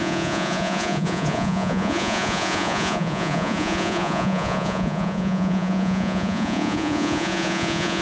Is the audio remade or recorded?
remade